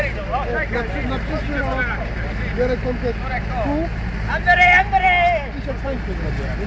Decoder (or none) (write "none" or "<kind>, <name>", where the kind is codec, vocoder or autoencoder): none